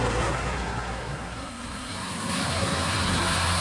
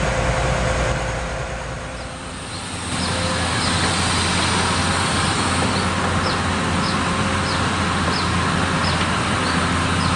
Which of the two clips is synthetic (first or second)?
first